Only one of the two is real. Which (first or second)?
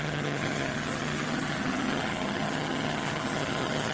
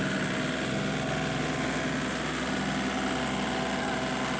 second